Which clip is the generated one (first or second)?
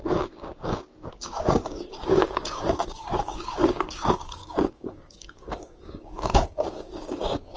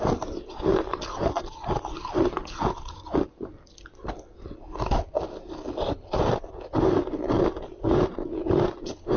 first